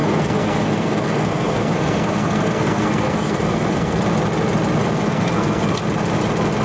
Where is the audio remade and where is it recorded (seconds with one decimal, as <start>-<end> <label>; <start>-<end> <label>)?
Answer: 0.0-4.0 remade; 4.0-4.8 recorded; 4.8-5.8 remade; 5.8-6.6 recorded